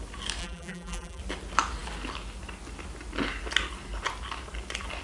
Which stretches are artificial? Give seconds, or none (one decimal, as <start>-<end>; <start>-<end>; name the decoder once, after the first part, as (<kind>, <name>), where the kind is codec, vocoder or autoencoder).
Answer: 0.4-1.2 (vocoder, BigVGAN v2)